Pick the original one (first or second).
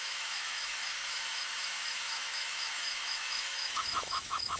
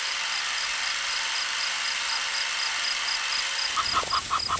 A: second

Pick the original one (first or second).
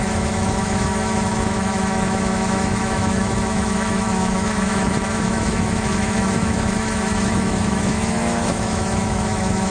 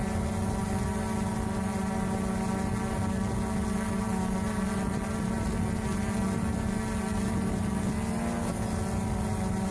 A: second